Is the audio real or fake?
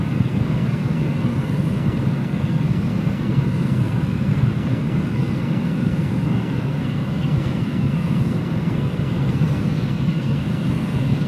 fake